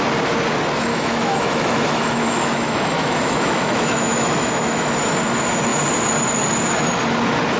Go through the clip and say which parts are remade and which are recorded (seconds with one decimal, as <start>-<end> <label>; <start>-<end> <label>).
0.0-0.9 recorded; 0.9-4.9 remade; 4.9-7.6 recorded